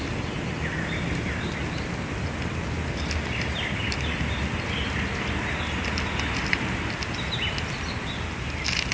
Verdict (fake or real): real